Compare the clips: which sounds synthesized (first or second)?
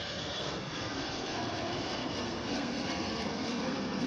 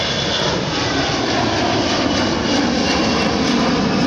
first